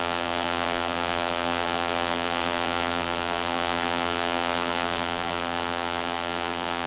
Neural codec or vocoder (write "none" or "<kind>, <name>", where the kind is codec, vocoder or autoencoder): vocoder, BigVGAN v2